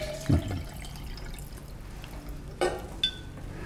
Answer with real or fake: real